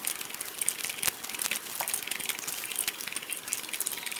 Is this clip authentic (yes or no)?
yes